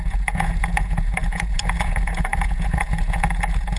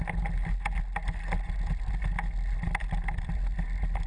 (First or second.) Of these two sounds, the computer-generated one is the first